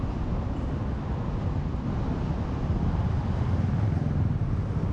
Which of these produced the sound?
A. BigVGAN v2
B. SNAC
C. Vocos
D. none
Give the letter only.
D